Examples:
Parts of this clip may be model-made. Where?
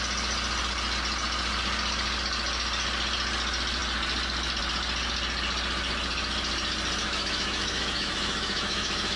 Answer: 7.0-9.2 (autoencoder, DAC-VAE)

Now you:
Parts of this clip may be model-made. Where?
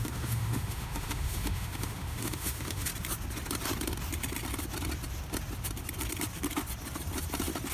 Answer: 0.0-2.9 (autoencoder, DAC-VAE)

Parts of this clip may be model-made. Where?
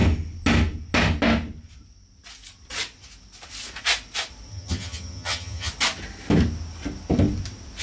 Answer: 4.5-5.7 (vocoder, HiFi-GAN)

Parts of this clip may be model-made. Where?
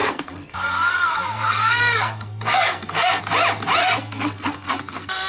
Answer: 0.0-3.2 (codec, SNAC); 3.8-5.3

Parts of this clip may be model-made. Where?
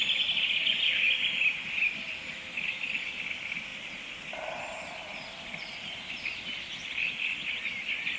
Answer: none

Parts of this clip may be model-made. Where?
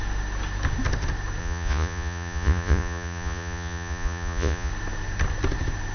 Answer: 1.4-4.7 (vocoder, Vocos)